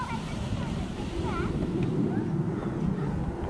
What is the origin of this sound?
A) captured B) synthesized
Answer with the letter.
A